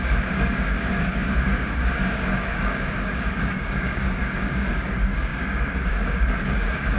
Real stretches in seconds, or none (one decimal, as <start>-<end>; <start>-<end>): none